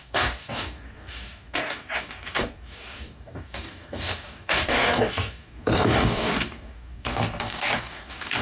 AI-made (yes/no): yes